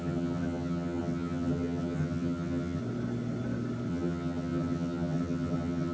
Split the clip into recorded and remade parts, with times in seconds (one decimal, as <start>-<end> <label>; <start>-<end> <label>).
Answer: 0.0-2.8 remade; 2.8-3.9 recorded; 3.9-5.9 remade